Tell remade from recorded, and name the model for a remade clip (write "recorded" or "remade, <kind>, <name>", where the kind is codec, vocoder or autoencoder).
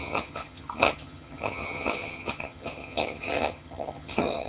remade, vocoder, HiFi-GAN